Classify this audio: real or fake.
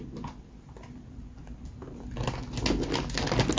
real